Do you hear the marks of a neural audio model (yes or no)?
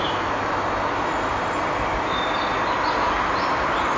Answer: no